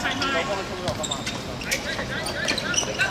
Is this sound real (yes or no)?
yes